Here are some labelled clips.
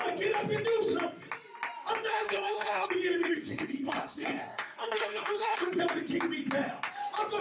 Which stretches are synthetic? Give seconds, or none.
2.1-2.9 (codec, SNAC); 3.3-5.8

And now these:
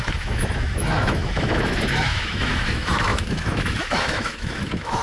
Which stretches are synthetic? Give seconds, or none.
0.0-5.0 (autoencoder, DAC-VAE)

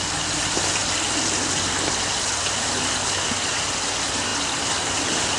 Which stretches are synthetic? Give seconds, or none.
none

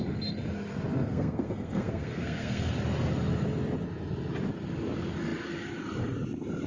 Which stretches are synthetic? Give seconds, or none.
0.9-2.7 (codec, SNAC)

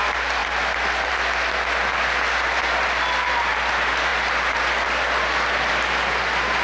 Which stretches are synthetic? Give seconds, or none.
none

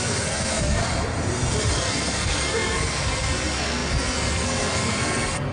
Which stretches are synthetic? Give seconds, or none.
0.0-0.8 (codec, SNAC); 1.7-5.5

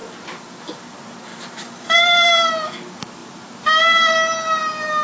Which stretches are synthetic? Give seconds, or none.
1.3-2.5 (vocoder, BigVGAN v2)